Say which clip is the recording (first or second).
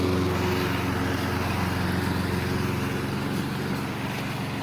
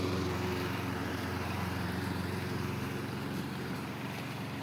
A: first